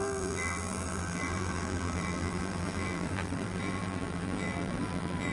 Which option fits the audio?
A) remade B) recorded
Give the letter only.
A